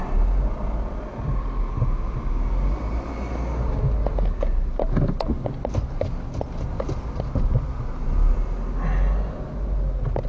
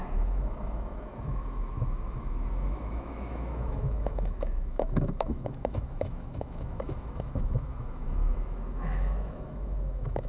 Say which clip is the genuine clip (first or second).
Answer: first